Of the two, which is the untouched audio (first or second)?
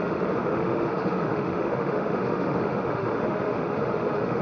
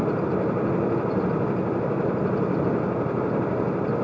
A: second